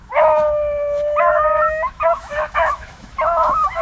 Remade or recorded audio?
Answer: remade